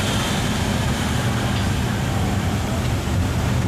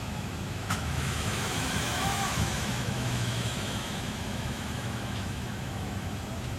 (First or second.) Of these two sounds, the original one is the first